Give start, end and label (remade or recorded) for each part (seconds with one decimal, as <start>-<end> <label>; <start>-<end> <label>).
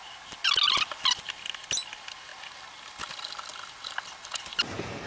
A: 0.0-5.1 recorded